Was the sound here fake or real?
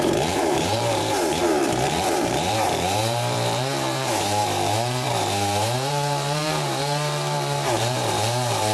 fake